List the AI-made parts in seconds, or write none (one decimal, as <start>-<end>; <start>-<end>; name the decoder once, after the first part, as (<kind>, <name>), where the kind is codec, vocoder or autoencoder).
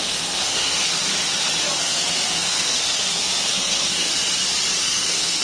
0.0-1.1 (codec, SNAC); 1.8-4.1; 4.8-5.4